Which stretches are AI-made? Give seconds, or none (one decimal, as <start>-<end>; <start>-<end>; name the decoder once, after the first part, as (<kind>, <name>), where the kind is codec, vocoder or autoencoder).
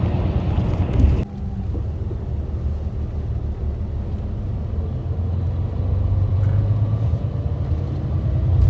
6.3-7.3 (vocoder, Vocos)